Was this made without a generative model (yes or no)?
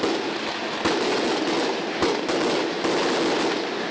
yes